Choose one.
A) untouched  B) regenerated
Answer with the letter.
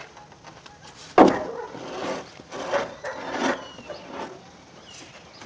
A